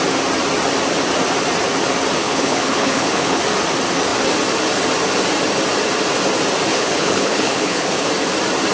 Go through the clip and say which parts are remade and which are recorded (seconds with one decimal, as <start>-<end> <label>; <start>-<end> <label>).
0.0-2.2 recorded; 2.2-3.4 remade; 3.4-6.7 recorded; 6.7-8.1 remade; 8.1-8.7 recorded